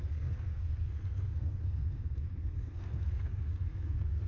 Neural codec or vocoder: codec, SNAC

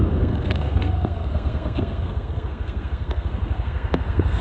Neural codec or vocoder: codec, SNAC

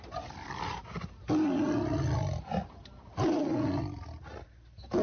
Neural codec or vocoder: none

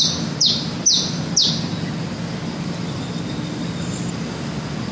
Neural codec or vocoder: none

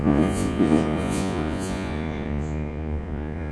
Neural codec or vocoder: vocoder, Vocos